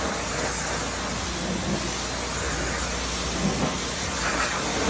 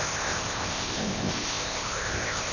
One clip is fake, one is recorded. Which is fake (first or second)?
second